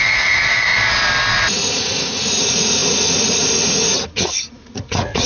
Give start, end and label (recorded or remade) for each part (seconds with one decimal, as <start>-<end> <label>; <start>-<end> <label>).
0.0-0.7 remade; 0.7-1.3 recorded; 1.3-5.3 remade